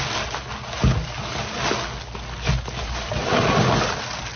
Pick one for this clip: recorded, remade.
recorded